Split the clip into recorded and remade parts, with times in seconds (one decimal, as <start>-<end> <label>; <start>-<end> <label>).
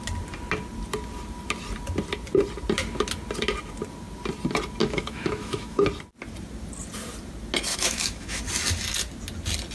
0.0-4.8 recorded; 4.8-5.8 remade; 5.8-7.7 recorded; 7.7-8.4 remade; 8.4-9.7 recorded